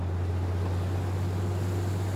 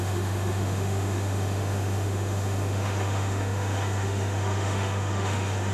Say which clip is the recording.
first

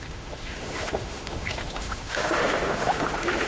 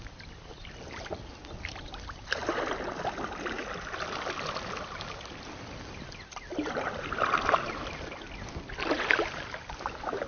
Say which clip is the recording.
second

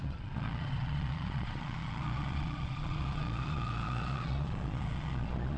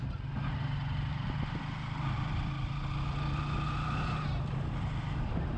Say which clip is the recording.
second